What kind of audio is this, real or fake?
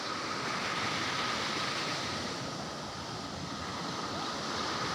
real